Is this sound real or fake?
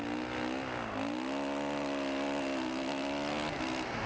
real